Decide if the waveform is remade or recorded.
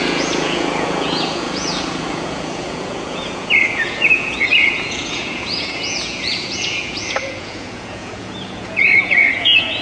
remade